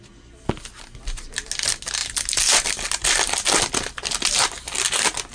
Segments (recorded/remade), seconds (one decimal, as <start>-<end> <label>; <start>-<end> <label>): 0.0-5.3 recorded